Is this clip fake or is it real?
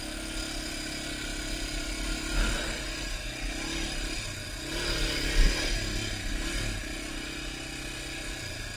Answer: real